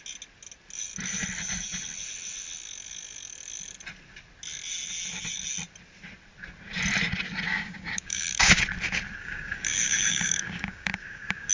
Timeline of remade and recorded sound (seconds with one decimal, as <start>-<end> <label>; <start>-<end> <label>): 0.0-7.5 recorded; 7.5-8.6 remade; 8.6-9.2 recorded; 9.2-11.5 remade